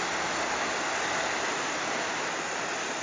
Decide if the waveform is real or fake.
real